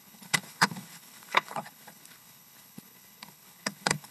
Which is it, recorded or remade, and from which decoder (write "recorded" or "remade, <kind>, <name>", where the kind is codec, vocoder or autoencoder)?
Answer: remade, codec, HILCodec